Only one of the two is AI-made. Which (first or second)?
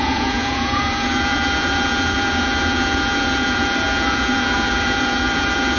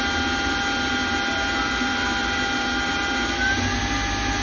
first